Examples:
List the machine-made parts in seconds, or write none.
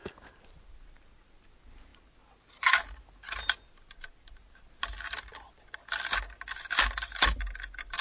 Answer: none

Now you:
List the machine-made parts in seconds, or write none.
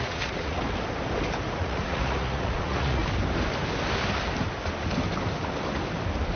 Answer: 0.0-0.6; 1.6-3.0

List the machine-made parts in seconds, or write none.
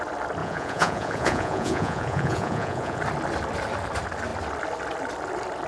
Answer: 0.4-3.0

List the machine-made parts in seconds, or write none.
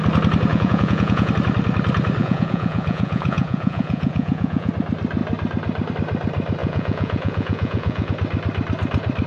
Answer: 0.5-1.3; 2.2-4.7; 6.6-8.1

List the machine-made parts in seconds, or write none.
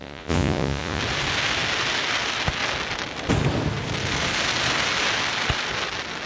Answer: 0.0-1.0